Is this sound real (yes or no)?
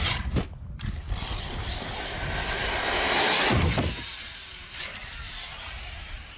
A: yes